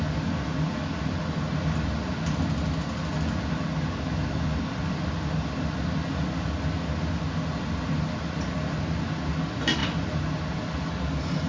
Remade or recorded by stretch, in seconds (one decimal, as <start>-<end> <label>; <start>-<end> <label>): 0.0-11.5 recorded